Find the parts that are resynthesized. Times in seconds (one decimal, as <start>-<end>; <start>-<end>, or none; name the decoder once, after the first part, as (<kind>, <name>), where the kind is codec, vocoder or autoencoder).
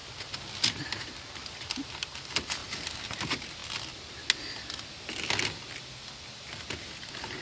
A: none